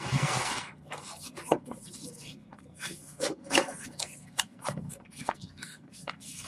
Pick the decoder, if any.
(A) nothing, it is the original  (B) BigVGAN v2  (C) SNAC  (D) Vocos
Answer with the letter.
C